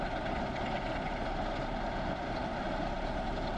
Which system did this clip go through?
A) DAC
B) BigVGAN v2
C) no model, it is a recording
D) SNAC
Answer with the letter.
C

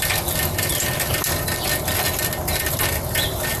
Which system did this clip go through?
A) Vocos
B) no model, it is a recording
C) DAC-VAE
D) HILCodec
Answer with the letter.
B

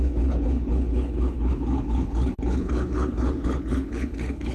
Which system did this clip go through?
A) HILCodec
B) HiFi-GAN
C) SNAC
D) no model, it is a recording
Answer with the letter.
A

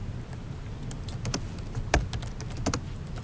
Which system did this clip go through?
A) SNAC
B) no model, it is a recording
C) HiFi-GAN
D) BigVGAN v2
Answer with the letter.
B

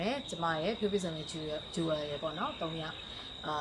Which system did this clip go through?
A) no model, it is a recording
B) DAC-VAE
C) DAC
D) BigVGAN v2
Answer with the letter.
A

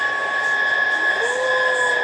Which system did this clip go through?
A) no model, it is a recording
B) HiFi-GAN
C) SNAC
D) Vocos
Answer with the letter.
A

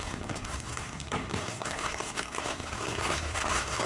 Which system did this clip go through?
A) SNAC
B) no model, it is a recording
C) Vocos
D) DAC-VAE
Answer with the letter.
A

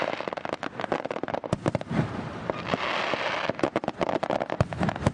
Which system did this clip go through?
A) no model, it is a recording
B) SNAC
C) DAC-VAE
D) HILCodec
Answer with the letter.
A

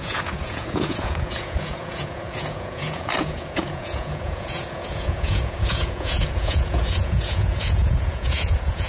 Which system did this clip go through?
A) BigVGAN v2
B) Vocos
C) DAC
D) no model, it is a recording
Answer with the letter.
B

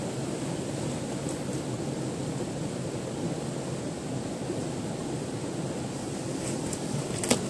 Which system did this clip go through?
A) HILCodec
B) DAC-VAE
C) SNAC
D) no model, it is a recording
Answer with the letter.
D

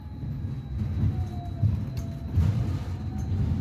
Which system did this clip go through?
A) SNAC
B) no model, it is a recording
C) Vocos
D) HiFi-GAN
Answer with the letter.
B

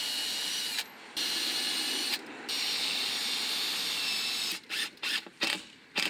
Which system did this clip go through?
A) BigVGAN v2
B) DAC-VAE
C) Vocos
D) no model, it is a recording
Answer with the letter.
D